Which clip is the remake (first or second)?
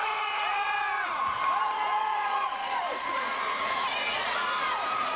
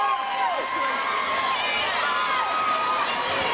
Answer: first